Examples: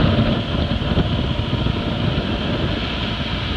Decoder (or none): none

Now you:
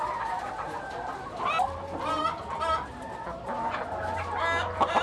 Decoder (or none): none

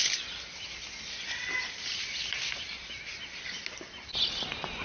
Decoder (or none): none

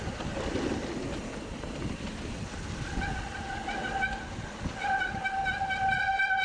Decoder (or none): none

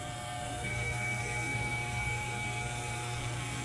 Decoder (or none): codec, SNAC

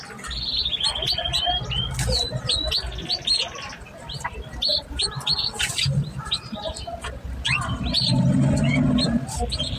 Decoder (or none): none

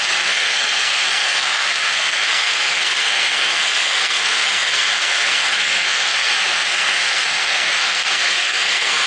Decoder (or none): codec, SNAC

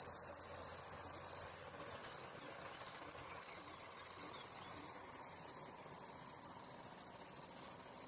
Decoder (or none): none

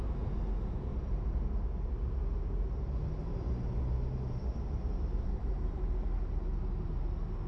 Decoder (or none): none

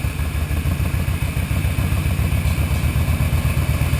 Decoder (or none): none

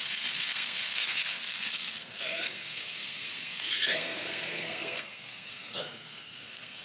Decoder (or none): codec, SNAC